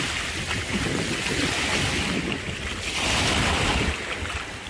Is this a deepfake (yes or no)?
no